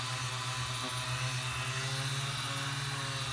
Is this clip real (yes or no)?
yes